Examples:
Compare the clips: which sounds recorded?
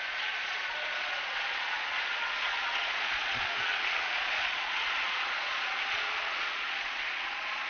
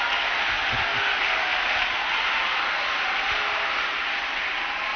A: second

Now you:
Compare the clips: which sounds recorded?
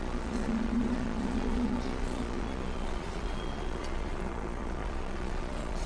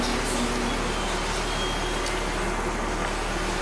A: second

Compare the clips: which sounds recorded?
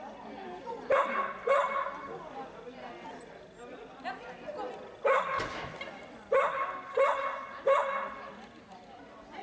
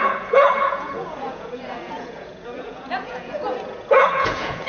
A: first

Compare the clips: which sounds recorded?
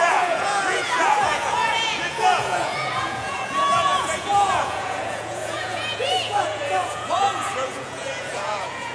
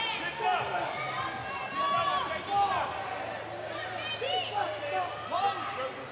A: second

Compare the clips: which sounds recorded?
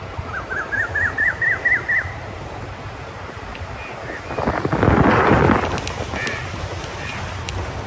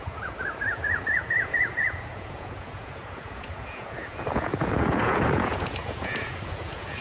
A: first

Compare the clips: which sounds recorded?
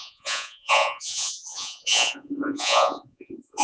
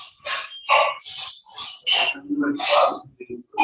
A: second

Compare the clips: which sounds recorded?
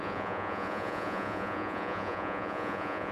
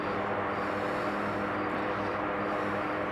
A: second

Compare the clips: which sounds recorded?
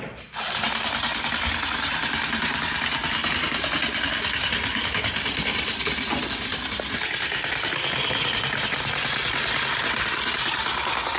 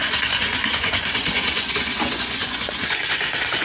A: first